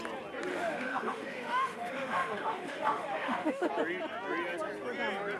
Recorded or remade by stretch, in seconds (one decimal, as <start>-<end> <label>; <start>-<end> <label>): 0.0-0.5 recorded; 0.5-3.7 remade; 3.7-5.4 recorded